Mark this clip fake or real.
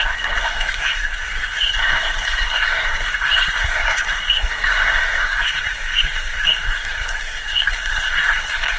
fake